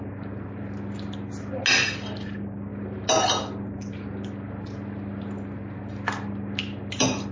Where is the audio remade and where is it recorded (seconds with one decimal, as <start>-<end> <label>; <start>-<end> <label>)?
0.0-7.3 recorded